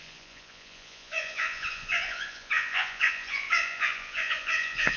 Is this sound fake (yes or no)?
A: yes